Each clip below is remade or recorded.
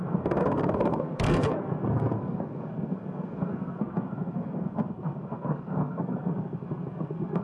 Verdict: remade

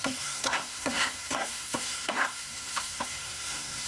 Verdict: remade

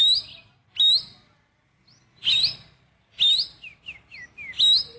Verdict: recorded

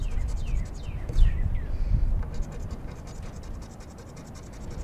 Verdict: recorded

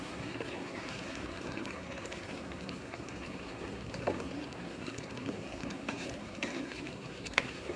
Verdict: remade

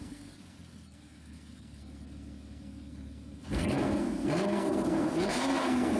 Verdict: remade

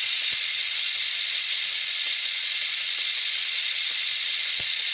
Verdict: remade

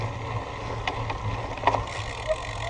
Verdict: recorded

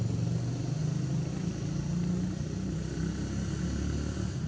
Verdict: recorded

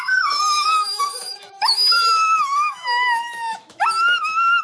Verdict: remade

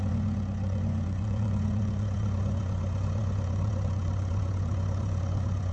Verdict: remade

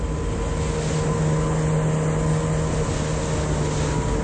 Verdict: recorded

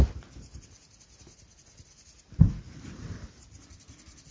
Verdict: recorded